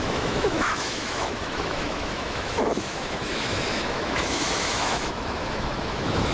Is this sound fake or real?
fake